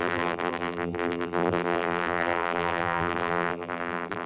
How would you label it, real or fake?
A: fake